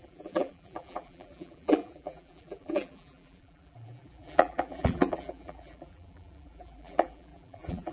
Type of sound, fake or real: fake